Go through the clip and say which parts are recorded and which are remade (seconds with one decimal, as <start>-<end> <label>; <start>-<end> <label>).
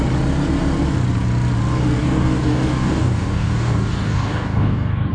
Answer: 0.0-2.0 recorded; 2.0-5.1 remade